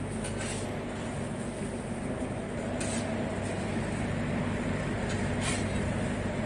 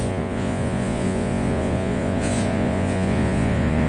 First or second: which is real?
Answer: first